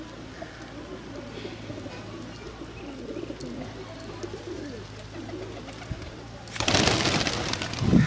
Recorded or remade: recorded